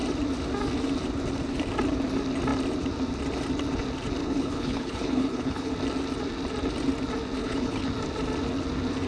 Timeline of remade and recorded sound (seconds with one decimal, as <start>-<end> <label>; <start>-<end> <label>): 0.0-4.2 recorded; 4.2-5.7 remade; 5.7-7.4 recorded; 7.4-7.9 remade; 7.9-9.1 recorded